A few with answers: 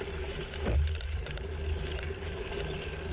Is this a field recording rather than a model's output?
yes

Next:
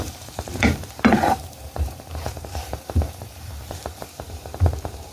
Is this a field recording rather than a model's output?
no